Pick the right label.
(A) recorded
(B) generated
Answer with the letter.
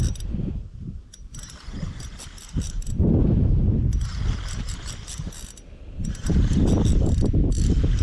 A